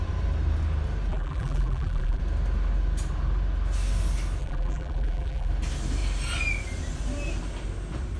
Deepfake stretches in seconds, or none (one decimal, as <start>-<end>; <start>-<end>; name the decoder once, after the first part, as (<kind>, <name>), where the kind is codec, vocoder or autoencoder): 1.1-2.2 (vocoder, BigVGAN v2); 4.4-5.5